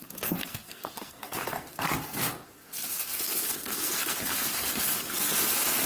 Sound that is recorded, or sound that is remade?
remade